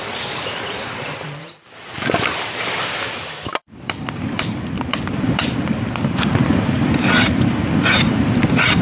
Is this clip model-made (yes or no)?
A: yes